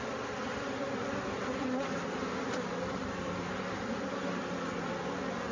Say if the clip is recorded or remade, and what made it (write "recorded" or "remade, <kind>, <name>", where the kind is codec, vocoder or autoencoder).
recorded